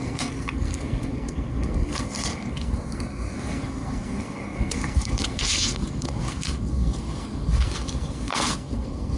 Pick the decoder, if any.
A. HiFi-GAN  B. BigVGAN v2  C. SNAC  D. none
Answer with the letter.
C